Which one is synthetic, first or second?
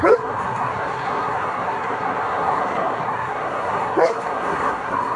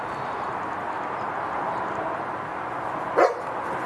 first